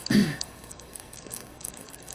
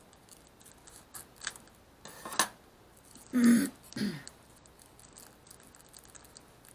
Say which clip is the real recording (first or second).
second